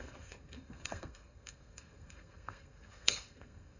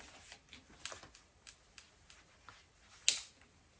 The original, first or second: second